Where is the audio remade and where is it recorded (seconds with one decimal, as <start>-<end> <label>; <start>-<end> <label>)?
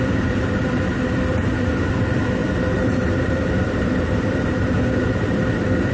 0.0-5.9 remade